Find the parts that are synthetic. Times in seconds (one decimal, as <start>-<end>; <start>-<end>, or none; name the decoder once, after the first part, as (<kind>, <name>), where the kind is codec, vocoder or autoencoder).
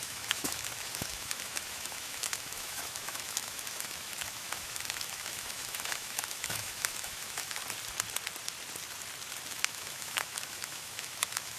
0.0-7.6 (autoencoder, DAC-VAE); 9.5-11.6